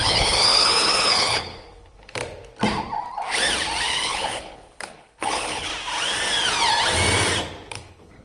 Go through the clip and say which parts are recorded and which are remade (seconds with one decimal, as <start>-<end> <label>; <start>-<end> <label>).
0.0-2.2 remade; 2.2-3.8 recorded; 3.8-5.7 remade; 5.7-7.7 recorded; 7.7-8.2 remade